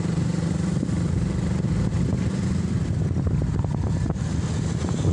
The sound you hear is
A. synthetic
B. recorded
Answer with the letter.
B